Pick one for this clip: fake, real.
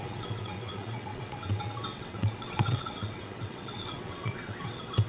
fake